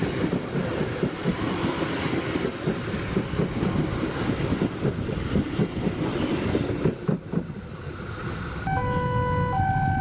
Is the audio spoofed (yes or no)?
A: no